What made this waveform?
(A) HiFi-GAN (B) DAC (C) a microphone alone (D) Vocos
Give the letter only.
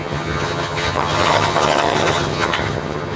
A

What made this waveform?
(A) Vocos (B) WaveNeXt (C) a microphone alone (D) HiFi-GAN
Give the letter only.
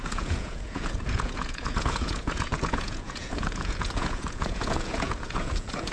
A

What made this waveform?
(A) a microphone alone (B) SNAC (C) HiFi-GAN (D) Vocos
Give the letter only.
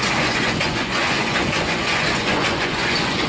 D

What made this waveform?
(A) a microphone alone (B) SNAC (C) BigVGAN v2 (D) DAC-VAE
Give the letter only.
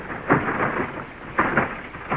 A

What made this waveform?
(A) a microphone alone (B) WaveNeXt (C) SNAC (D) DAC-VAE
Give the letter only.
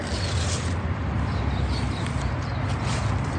A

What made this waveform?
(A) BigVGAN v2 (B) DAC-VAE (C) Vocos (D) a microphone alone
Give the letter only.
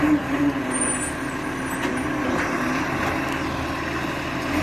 D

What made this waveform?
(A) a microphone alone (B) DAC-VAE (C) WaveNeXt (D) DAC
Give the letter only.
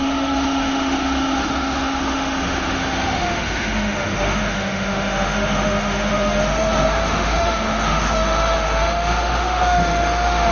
B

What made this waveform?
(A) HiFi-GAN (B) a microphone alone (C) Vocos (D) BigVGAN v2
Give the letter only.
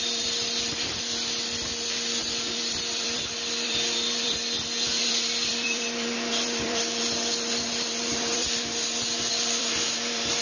D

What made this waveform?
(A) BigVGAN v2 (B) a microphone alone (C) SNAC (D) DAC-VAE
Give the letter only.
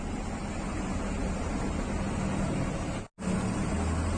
B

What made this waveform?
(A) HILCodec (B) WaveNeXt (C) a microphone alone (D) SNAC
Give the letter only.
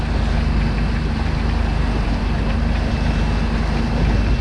C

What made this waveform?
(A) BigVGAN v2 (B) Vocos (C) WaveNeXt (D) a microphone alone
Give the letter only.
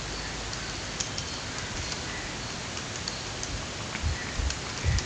D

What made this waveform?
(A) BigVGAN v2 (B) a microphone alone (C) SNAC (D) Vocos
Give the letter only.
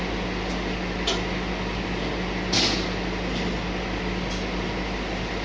B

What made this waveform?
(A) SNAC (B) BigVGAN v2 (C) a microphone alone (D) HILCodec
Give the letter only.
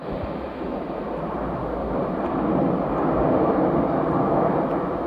C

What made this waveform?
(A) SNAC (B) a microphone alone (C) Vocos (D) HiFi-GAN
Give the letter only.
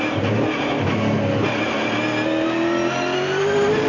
B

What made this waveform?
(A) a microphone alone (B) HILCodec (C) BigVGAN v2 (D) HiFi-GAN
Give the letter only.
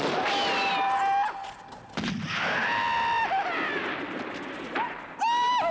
A